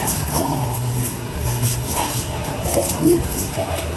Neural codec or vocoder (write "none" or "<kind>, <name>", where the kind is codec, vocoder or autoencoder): codec, SNAC